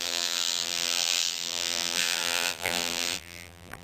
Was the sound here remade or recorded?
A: remade